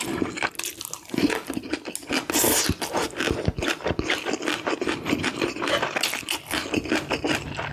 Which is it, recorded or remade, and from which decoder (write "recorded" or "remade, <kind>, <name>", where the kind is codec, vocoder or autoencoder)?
recorded